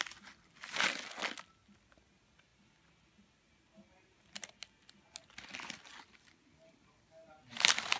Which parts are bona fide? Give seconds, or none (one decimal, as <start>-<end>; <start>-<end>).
0.0-8.0